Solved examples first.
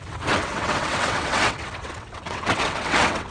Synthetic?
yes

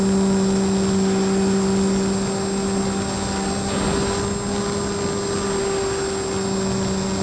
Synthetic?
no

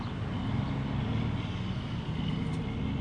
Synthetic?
no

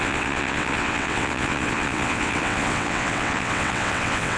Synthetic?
yes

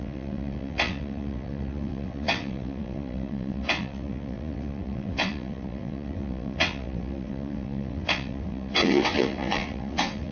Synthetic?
yes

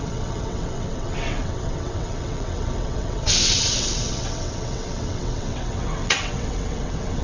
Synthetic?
yes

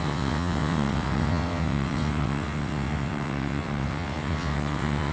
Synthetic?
yes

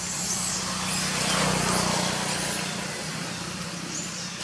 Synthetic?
no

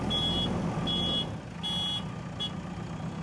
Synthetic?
no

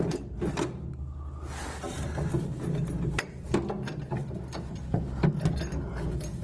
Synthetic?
no